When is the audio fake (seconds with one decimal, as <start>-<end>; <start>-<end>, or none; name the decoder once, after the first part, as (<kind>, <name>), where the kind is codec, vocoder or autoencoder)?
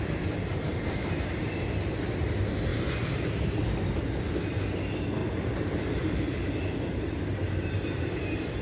0.7-1.4 (vocoder, BigVGAN v2); 2.7-3.5; 5.2-8.6